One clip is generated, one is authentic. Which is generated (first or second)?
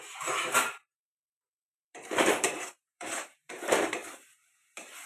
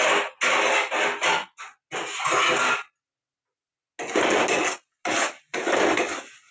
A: first